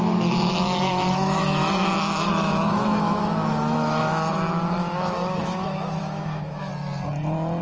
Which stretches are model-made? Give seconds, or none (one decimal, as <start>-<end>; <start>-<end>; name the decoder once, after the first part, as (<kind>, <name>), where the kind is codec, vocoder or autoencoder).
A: 0.0-6.7 (autoencoder, DAC-VAE)